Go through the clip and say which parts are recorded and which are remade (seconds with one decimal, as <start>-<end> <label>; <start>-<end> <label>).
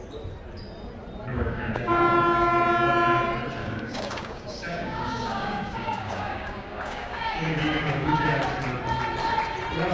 0.0-1.3 recorded; 1.3-1.9 remade; 1.9-3.6 recorded; 3.6-8.4 remade; 8.4-9.9 recorded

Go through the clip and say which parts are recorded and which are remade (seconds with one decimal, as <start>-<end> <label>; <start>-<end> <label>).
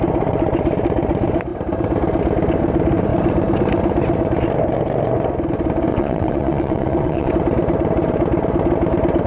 0.0-5.9 recorded; 5.9-7.3 remade; 7.3-9.3 recorded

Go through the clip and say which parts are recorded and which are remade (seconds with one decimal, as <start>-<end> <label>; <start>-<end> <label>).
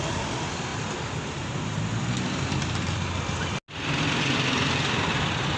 0.0-5.6 recorded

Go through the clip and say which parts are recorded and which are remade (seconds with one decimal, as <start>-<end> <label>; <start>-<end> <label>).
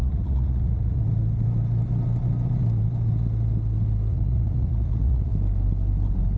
0.0-1.0 remade; 1.0-4.1 recorded; 4.1-5.3 remade; 5.3-6.4 recorded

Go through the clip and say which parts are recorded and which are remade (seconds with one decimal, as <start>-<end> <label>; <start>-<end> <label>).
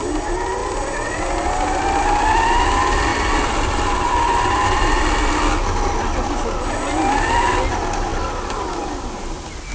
0.0-3.1 recorded; 3.1-5.0 remade; 5.0-9.7 recorded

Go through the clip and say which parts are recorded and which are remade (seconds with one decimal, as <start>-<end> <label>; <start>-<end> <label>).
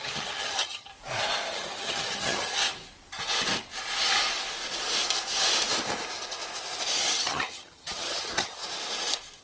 0.0-0.9 remade; 0.9-1.5 recorded; 1.5-2.6 remade; 2.6-7.0 recorded; 7.0-8.6 remade; 8.6-9.4 recorded